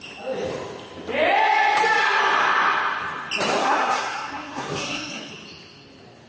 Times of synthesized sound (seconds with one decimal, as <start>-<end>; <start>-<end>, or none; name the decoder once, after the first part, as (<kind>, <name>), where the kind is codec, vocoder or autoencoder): 3.6-5.3 (codec, SNAC)

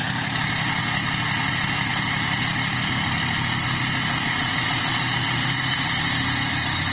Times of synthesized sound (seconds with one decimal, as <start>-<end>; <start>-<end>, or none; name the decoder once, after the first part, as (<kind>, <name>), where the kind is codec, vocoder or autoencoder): 0.0-0.8 (vocoder, BigVGAN v2); 1.5-1.9; 4.9-6.9